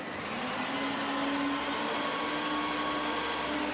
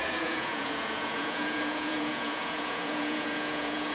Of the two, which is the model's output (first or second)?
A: second